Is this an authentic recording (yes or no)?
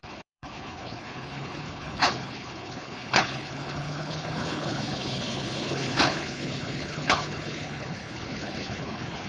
no